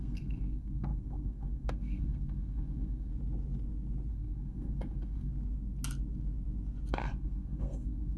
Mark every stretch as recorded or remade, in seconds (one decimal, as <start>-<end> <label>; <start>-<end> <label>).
0.0-3.1 remade; 3.1-4.1 recorded; 4.1-5.3 remade; 5.3-6.9 recorded; 6.9-8.2 remade